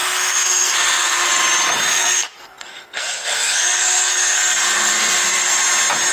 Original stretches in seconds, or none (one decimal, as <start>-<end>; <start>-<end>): 1.3-1.9; 5.6-6.1